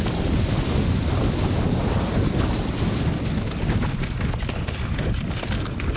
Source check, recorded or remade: recorded